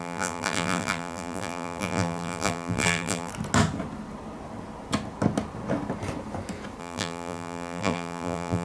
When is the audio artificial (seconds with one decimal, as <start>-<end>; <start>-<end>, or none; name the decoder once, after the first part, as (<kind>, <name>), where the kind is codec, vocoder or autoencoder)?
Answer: 0.0-3.3 (vocoder, BigVGAN v2); 6.8-8.6